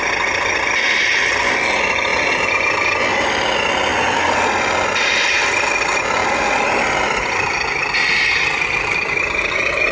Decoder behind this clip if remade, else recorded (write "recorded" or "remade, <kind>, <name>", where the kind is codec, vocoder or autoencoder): recorded